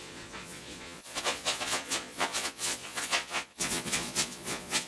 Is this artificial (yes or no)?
yes